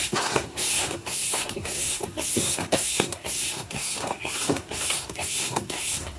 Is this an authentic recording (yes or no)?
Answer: no